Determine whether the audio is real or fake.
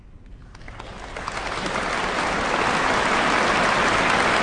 real